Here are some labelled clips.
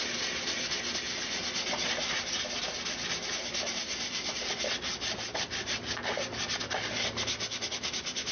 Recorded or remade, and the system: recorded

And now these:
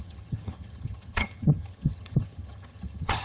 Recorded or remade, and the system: remade, vocoder, HiFi-GAN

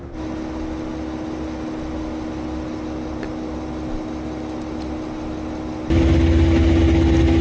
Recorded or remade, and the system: recorded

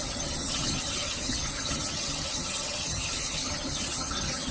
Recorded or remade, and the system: remade, vocoder, HiFi-GAN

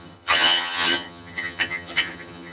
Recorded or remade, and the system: remade, vocoder, HiFi-GAN